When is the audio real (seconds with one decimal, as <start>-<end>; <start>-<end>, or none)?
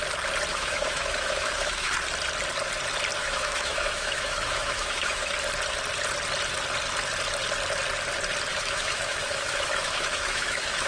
0.0-0.5; 1.9-3.2; 5.3-8.5